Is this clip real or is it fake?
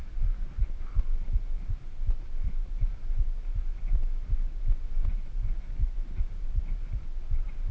real